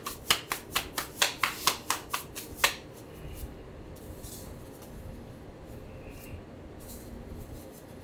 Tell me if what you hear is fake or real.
real